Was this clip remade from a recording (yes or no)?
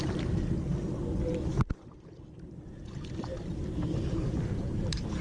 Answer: no